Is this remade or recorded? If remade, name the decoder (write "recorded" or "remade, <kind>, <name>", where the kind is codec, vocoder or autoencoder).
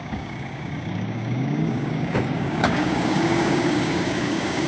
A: remade, codec, DAC